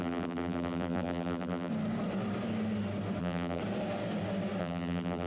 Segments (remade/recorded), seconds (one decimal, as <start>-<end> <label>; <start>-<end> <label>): 0.0-1.7 remade; 1.7-3.2 recorded; 3.2-3.6 remade; 3.6-4.6 recorded; 4.6-5.3 remade